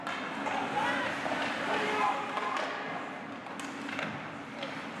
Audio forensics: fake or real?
real